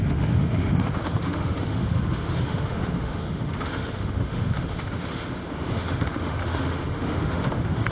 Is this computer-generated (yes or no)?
yes